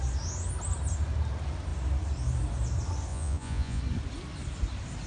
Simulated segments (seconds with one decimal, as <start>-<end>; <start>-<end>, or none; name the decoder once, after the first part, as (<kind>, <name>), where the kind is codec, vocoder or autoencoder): 3.1-3.8 (vocoder, Vocos)